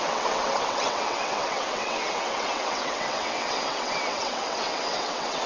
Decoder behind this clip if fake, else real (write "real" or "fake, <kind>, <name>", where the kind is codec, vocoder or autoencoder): fake, vocoder, WaveNeXt